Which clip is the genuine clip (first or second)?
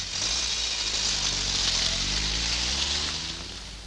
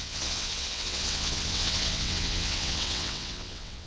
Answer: first